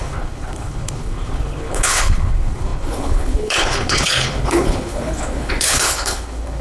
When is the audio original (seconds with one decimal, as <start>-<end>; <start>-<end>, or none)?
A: none